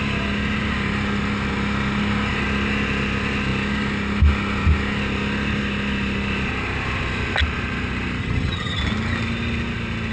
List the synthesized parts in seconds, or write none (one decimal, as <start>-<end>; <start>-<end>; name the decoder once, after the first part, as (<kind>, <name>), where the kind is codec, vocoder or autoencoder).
8.2-8.8 (vocoder, HiFi-GAN)